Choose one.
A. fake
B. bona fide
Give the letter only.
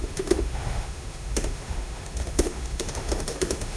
A